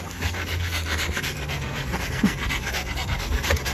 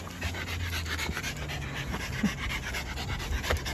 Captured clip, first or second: second